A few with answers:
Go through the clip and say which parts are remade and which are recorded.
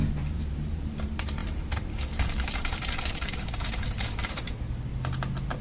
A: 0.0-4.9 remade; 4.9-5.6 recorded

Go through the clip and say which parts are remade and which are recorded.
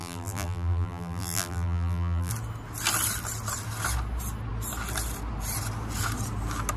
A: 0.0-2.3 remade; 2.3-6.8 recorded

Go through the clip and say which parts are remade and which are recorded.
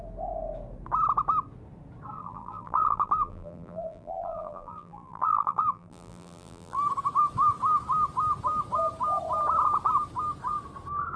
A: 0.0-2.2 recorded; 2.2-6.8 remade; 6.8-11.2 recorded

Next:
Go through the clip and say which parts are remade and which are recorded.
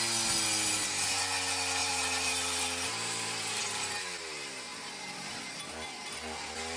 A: 0.0-1.8 recorded; 1.8-3.6 remade; 3.6-6.8 recorded